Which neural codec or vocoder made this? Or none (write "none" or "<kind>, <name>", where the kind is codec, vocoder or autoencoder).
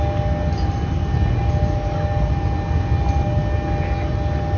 none